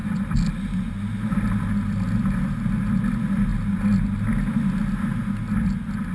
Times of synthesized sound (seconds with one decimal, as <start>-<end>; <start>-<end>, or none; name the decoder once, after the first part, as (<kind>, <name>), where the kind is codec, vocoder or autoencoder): none